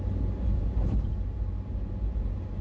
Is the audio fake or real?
real